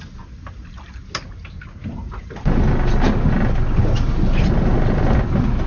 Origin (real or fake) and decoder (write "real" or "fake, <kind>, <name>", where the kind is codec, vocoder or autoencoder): real